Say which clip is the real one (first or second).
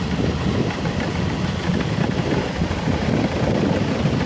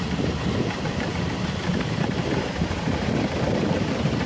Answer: first